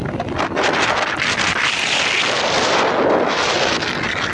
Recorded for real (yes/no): yes